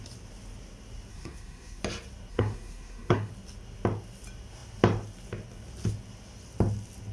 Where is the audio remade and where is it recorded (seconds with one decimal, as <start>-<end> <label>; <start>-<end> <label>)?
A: 0.0-1.1 recorded; 1.1-1.8 remade; 1.8-2.3 recorded; 2.3-3.3 remade; 3.3-7.1 recorded